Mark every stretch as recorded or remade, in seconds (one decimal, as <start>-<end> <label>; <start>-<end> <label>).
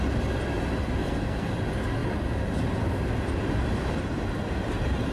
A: 0.0-1.0 recorded; 1.0-1.5 remade; 1.5-5.1 recorded